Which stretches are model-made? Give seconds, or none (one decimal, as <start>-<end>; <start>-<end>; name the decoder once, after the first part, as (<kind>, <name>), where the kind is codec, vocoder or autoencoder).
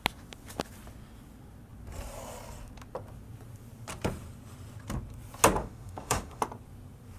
5.6-6.4 (autoencoder, DAC-VAE)